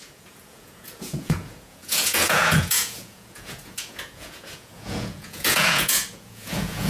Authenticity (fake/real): fake